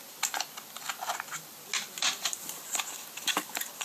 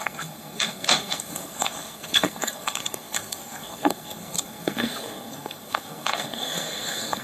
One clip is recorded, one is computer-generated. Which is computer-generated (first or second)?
second